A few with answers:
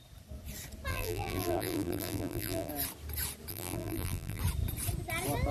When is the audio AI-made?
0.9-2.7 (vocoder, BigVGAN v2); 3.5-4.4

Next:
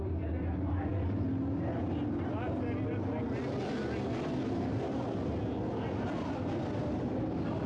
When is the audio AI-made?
none

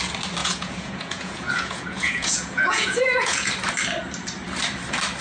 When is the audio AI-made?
0.4-3.5 (vocoder, Vocos)